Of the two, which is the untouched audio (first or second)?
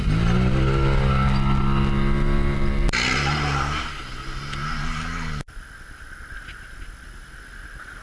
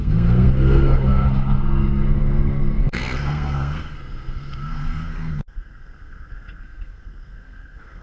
first